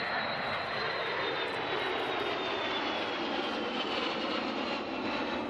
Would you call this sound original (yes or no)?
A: yes